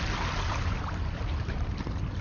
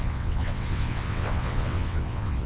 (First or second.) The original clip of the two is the first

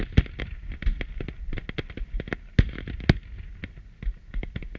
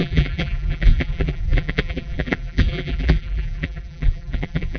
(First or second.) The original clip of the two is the first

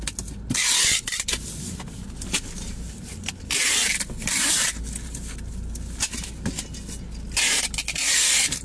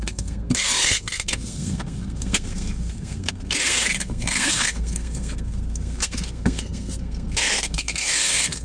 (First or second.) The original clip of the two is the first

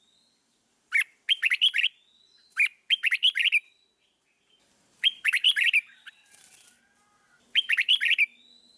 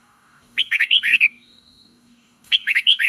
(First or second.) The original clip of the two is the first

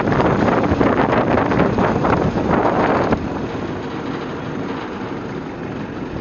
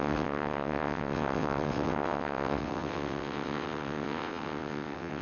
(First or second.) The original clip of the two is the first